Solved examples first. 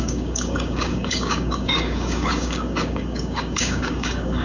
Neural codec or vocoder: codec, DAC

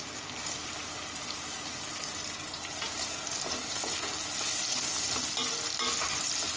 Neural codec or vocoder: none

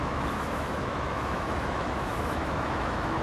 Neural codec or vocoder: autoencoder, DAC-VAE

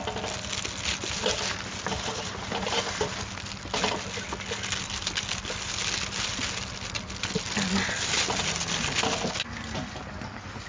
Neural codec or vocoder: none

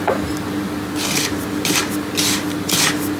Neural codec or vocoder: none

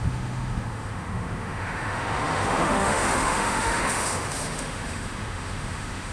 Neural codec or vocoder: autoencoder, DAC-VAE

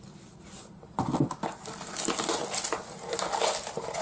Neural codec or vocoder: none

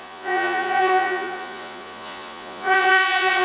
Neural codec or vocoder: vocoder, Vocos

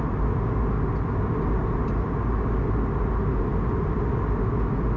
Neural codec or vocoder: none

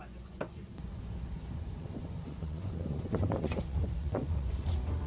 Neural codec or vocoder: vocoder, Vocos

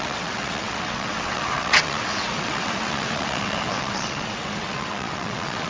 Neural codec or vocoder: vocoder, WaveNeXt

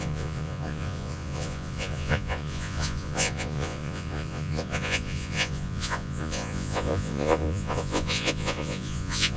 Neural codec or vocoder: vocoder, Vocos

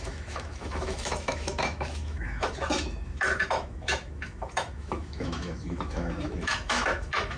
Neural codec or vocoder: autoencoder, DAC-VAE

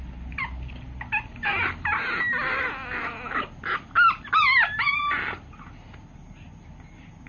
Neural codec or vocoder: none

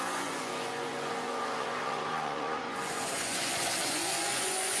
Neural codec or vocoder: vocoder, Vocos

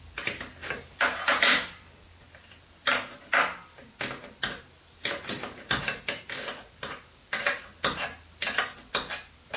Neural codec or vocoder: none